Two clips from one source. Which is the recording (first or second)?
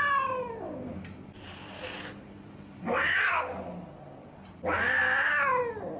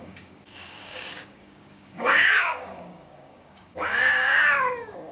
first